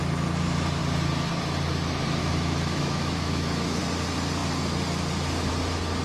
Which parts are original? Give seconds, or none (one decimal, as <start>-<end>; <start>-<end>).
0.0-2.2; 3.8-6.0